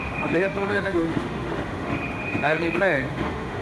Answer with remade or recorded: remade